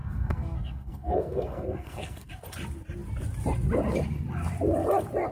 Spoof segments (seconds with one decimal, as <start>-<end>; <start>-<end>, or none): 0.0-2.3